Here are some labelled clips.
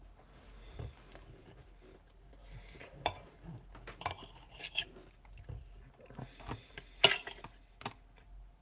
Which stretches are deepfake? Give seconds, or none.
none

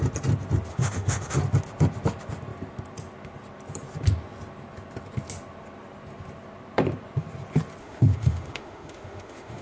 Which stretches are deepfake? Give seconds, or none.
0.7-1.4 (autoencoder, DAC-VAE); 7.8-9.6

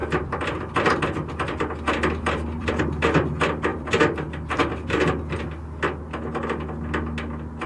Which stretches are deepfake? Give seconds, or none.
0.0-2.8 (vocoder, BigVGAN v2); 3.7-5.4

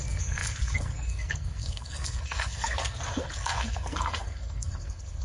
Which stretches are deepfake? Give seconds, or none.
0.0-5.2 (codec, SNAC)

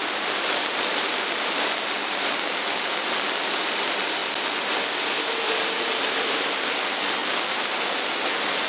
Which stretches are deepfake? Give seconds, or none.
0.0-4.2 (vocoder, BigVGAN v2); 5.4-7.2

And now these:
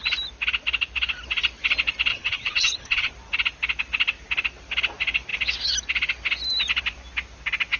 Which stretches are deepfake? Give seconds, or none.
2.1-3.1 (vocoder, HiFi-GAN)